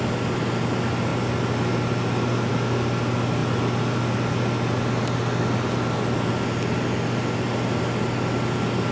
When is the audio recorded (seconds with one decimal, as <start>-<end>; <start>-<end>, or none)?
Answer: 0.0-8.9